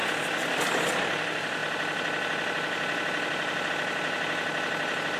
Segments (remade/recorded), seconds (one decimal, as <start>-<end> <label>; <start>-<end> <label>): 0.0-5.2 recorded